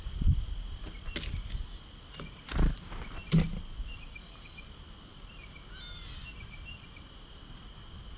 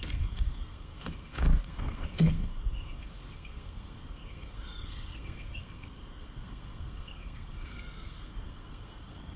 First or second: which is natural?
first